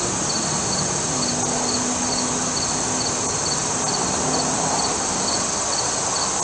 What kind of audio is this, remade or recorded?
recorded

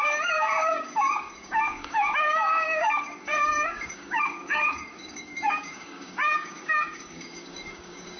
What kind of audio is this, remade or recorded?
remade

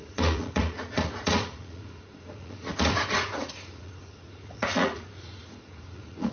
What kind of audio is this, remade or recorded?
remade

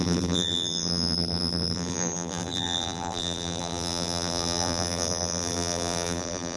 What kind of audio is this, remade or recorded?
remade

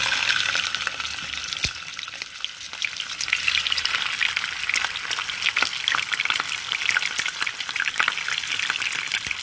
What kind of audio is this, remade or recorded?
recorded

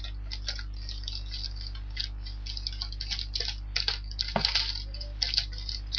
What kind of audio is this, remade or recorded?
recorded